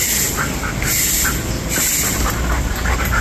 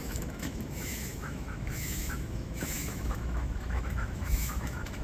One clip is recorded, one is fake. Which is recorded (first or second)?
first